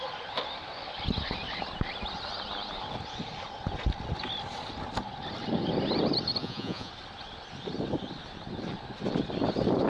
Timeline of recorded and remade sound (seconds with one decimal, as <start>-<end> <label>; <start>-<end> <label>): 0.0-6.4 recorded; 6.4-6.9 remade; 6.9-9.9 recorded